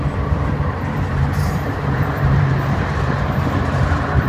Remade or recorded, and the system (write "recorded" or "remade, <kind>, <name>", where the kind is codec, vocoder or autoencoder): remade, vocoder, BigVGAN v2